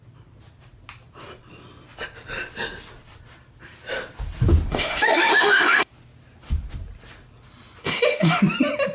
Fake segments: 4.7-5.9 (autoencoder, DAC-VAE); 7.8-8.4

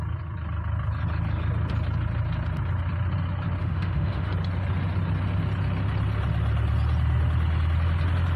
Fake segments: 3.6-4.3 (autoencoder, DAC-VAE)

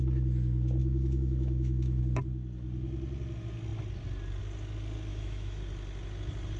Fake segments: 0.8-2.0 (autoencoder, DAC-VAE); 5.1-5.6

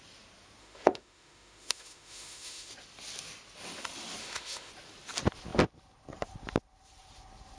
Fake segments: 0.6-2.7 (autoencoder, DAC-VAE); 4.2-4.7

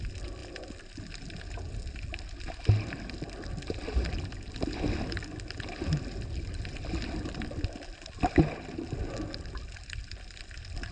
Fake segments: none

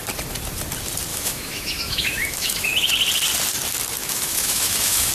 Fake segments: 1.1-2.9 (autoencoder, DAC-VAE); 4.0-5.1

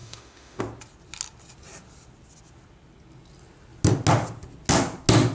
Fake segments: 0.0-0.6 (autoencoder, DAC-VAE)